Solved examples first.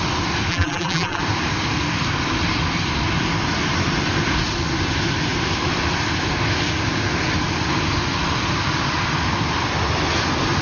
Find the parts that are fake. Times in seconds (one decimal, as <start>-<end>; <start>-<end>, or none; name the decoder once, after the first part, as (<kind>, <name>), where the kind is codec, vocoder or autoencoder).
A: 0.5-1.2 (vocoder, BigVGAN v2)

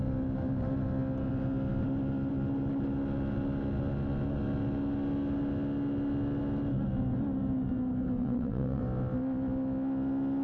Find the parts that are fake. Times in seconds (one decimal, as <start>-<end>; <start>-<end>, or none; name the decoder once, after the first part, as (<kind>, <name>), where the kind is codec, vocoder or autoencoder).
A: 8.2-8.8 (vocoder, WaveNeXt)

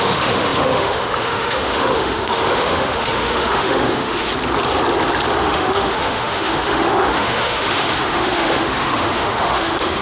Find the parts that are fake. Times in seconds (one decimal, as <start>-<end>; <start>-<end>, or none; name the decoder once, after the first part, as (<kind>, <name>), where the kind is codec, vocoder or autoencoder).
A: 0.0-4.3 (autoencoder, DAC-VAE); 5.4-10.0

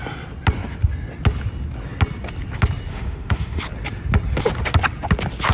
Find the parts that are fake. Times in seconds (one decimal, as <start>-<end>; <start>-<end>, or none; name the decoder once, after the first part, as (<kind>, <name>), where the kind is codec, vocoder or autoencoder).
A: 2.9-3.6 (autoencoder, DAC-VAE)